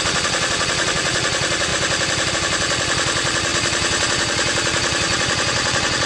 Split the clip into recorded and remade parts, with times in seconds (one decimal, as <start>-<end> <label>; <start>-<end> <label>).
0.0-1.7 remade; 1.7-2.3 recorded; 2.3-6.1 remade